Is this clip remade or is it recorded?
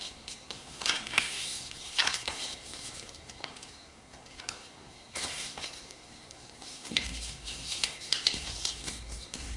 remade